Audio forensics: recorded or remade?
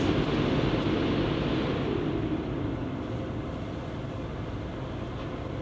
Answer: recorded